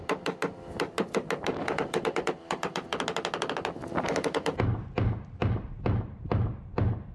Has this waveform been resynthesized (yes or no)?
no